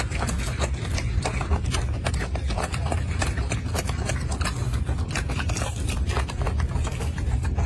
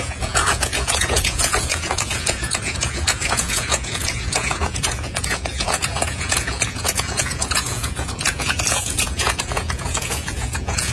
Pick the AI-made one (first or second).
second